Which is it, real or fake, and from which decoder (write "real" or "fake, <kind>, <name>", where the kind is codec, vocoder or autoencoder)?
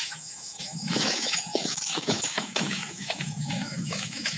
fake, autoencoder, DAC-VAE